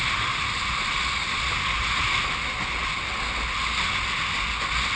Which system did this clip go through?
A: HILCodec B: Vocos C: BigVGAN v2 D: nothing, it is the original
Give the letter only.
D